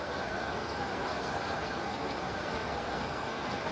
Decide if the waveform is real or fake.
fake